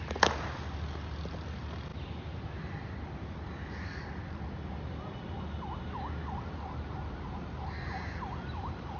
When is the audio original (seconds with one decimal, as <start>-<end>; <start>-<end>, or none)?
0.0-9.0